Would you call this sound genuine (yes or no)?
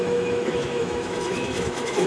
no